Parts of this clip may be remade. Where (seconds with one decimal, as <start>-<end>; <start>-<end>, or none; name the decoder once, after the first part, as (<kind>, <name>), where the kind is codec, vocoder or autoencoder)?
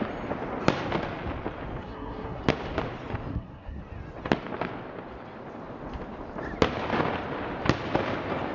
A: 1.8-2.4 (codec, SNAC); 3.3-3.8